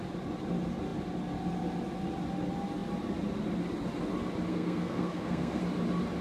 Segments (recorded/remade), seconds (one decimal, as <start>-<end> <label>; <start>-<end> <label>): 0.0-4.5 recorded; 4.5-5.6 remade; 5.6-6.2 recorded